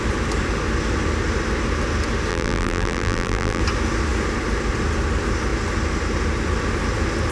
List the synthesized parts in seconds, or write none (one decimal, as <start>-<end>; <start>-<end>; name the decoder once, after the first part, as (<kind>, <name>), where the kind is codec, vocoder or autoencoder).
2.3-3.6 (vocoder, BigVGAN v2)